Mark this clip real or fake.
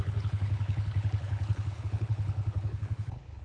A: fake